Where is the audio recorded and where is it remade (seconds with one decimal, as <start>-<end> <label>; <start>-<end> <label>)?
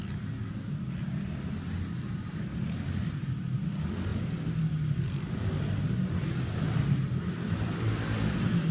0.0-6.2 recorded; 6.2-8.7 remade